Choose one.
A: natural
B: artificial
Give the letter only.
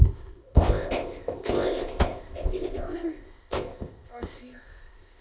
B